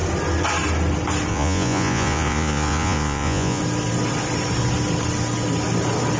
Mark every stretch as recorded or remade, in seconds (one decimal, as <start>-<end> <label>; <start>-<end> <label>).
0.0-1.3 recorded; 1.3-3.6 remade; 3.6-6.2 recorded

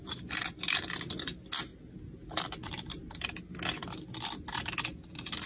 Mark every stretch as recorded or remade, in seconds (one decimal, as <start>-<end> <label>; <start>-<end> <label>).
0.0-5.5 recorded

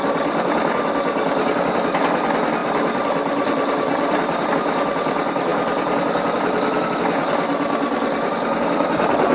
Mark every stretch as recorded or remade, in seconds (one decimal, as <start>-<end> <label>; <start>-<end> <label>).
0.0-2.6 recorded; 2.6-4.5 remade; 4.5-5.5 recorded; 5.5-7.0 remade; 7.0-7.5 recorded; 7.5-8.3 remade; 8.3-9.3 recorded

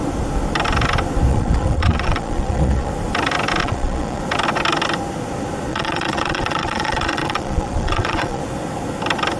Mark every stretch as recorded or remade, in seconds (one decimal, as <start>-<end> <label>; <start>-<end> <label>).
0.0-1.3 recorded; 1.3-2.9 remade; 2.9-3.6 recorded; 3.6-4.2 remade; 4.2-5.7 recorded; 5.7-8.4 remade; 8.4-9.4 recorded